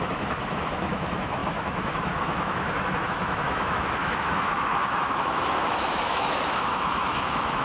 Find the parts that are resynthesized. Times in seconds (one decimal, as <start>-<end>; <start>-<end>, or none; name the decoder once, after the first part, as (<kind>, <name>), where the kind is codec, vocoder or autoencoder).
0.0-7.6 (autoencoder, DAC-VAE)